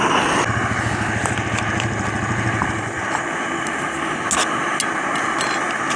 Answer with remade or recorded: recorded